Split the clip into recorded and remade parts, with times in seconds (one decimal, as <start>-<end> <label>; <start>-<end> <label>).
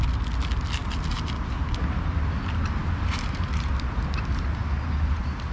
0.0-2.8 recorded; 2.8-3.7 remade; 3.7-5.5 recorded